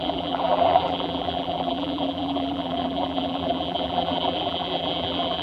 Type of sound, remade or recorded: remade